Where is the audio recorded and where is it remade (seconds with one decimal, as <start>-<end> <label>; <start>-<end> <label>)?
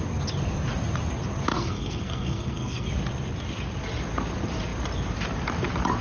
0.0-1.5 recorded; 1.5-2.9 remade; 2.9-6.0 recorded